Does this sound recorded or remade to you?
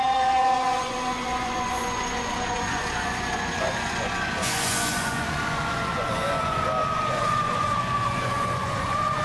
remade